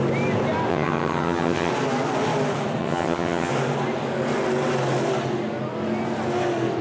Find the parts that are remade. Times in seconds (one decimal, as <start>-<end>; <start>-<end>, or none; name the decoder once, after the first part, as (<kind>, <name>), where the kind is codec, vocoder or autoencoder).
0.7-1.7 (vocoder, HiFi-GAN); 2.8-3.5